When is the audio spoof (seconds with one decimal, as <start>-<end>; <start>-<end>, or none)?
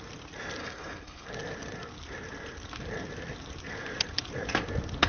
0.6-1.3